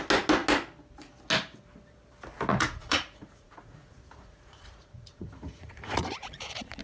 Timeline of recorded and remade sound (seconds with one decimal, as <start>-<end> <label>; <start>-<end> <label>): 0.0-2.5 recorded; 2.5-6.8 remade